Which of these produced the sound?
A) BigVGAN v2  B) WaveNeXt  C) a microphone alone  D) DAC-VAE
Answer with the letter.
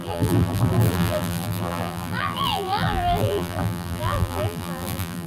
A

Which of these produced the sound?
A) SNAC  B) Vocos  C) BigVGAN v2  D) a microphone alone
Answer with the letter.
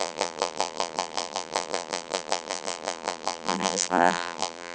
C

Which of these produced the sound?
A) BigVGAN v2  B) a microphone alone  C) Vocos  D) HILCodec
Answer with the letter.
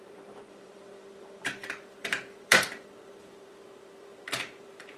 A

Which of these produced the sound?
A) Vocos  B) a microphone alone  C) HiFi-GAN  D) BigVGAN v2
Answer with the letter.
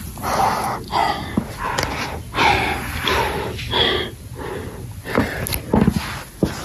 B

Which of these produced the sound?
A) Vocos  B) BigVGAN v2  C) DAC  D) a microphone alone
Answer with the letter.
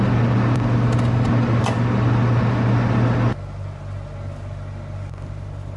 D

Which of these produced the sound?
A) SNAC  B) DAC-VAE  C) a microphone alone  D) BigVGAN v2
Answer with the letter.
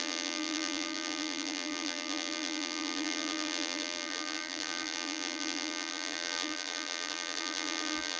D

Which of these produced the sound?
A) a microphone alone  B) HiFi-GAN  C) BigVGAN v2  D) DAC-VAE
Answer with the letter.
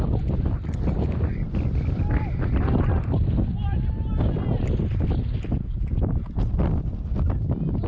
A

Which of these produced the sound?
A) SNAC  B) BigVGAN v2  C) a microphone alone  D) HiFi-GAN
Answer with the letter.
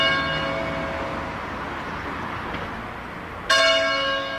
C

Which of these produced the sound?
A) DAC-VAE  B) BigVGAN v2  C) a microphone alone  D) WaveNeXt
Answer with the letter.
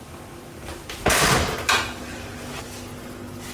C